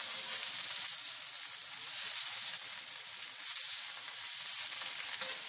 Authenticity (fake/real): real